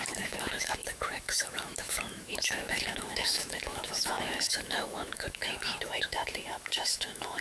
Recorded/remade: remade